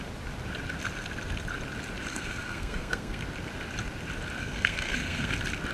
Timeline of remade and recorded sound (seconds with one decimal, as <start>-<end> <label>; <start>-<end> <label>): 0.0-2.1 recorded; 2.1-3.2 remade; 3.2-4.4 recorded; 4.4-5.3 remade; 5.3-5.7 recorded